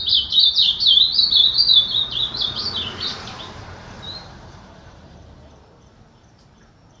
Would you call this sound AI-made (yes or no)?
yes